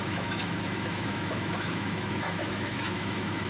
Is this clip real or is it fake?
fake